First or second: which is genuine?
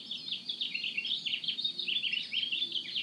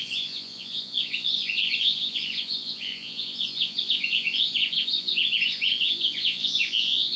first